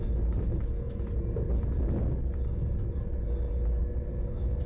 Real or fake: real